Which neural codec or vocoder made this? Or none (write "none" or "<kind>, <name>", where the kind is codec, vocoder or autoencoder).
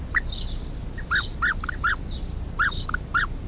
none